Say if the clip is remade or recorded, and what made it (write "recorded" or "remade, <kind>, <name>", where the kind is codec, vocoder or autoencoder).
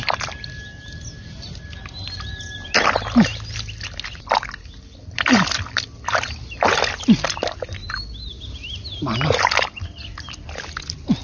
recorded